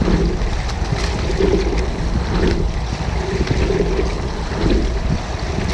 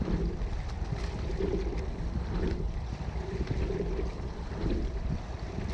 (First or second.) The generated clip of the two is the second